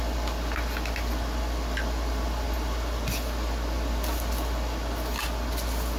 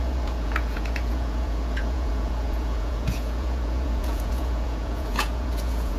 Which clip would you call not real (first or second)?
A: second